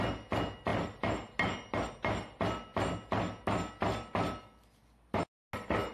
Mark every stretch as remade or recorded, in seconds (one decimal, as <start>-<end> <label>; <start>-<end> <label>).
0.0-5.9 recorded